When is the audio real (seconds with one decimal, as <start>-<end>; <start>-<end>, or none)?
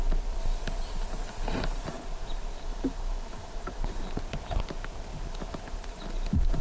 0.0-2.5; 4.0-6.6